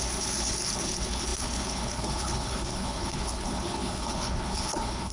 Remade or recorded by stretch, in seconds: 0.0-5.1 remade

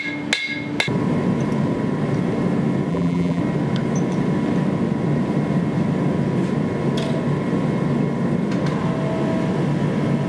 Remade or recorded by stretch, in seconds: 0.0-2.9 recorded; 2.9-3.4 remade; 3.4-10.3 recorded

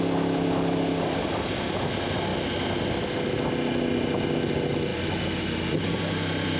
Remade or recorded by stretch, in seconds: 0.0-6.6 recorded